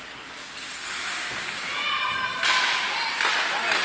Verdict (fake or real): real